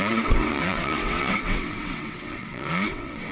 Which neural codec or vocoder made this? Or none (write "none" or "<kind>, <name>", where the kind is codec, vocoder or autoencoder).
vocoder, WaveNeXt